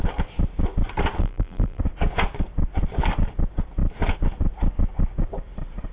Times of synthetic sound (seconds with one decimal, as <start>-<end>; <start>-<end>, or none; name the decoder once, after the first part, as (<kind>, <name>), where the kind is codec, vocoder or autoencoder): 1.2-1.8 (vocoder, BigVGAN v2)